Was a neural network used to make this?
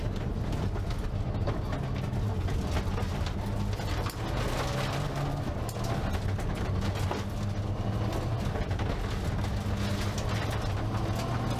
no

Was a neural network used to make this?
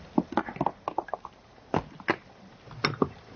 no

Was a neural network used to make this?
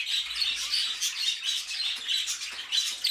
no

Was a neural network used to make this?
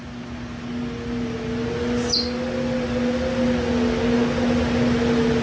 no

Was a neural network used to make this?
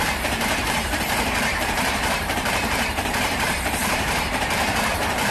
yes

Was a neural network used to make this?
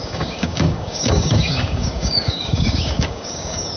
yes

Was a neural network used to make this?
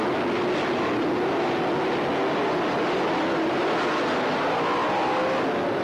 no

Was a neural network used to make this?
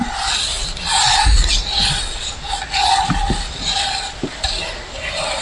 no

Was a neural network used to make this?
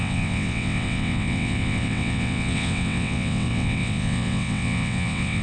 yes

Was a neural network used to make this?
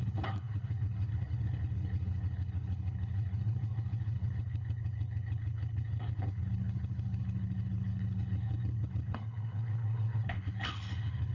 yes